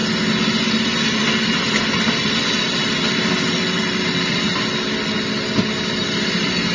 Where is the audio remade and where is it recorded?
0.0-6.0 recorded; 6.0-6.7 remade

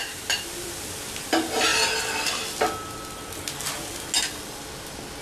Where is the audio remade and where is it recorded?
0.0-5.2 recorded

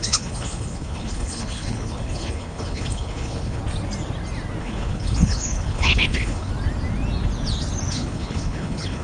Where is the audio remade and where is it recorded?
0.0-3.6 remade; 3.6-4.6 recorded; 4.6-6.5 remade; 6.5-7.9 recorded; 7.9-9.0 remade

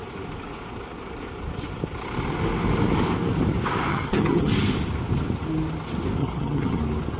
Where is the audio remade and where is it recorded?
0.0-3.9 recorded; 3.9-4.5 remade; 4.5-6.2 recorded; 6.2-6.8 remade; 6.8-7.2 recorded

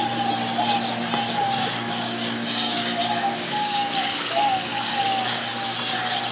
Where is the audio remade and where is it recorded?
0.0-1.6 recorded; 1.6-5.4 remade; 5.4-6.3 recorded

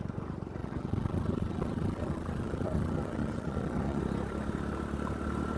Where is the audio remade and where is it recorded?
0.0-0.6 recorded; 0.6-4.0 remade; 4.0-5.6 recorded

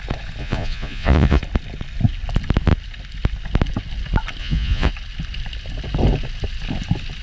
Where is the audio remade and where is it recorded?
0.0-0.4 recorded; 0.4-1.4 remade; 1.4-4.4 recorded; 4.4-4.9 remade; 4.9-7.2 recorded

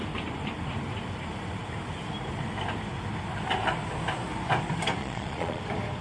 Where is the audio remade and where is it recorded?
0.0-5.0 recorded; 5.0-5.6 remade; 5.6-6.0 recorded